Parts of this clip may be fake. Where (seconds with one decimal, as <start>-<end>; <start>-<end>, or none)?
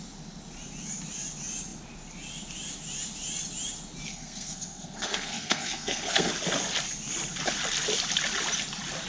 4.1-6.3